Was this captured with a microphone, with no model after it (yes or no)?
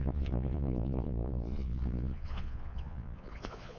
no